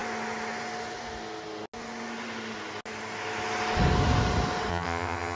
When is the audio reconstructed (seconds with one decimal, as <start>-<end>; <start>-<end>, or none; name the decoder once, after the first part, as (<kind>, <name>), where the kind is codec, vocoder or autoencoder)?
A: 4.7-5.4 (vocoder, HiFi-GAN)